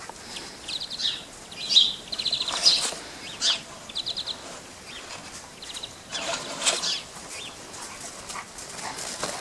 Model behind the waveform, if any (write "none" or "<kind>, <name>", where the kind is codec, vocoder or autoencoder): none